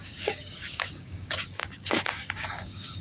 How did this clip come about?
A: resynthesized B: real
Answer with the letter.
A